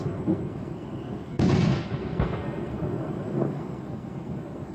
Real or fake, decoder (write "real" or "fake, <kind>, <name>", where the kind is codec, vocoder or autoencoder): fake, codec, SNAC